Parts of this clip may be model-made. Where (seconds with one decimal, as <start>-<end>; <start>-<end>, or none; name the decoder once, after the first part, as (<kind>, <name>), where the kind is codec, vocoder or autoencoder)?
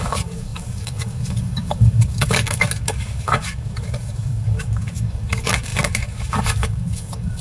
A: 0.0-7.4 (codec, DAC)